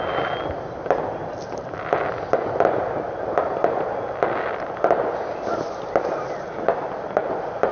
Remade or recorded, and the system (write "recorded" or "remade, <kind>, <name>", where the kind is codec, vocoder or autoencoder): recorded